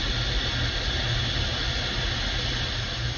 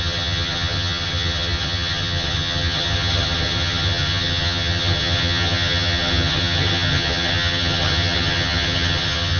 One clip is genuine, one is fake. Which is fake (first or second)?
second